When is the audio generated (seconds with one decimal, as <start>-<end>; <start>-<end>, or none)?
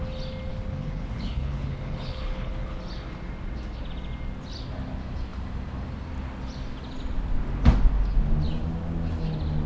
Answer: 0.5-2.8